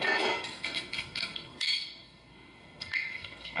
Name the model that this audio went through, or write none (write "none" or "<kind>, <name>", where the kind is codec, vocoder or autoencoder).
codec, SNAC